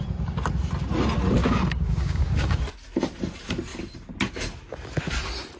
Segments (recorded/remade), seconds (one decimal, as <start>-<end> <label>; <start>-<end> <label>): 0.0-1.4 recorded; 1.4-2.6 remade; 2.6-5.6 recorded